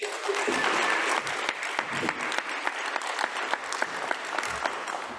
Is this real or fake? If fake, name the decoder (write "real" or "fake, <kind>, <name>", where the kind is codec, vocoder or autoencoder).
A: real